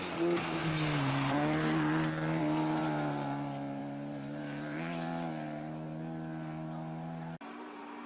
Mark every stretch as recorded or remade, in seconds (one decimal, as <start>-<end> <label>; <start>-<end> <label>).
0.0-8.1 recorded